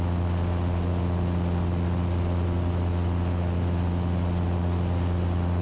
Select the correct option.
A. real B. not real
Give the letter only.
A